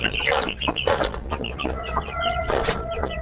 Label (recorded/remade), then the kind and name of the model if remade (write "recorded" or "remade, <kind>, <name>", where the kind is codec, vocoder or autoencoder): remade, vocoder, Vocos